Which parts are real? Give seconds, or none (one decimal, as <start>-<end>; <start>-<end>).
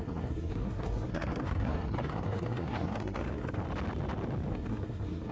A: 3.6-4.5